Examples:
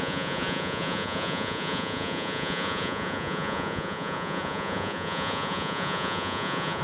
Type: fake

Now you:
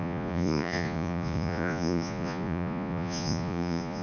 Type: fake